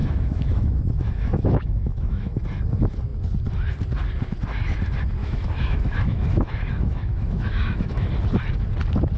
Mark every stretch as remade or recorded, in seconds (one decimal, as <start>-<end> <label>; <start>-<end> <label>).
0.0-2.4 remade; 2.4-5.2 recorded; 5.2-8.1 remade; 8.1-9.2 recorded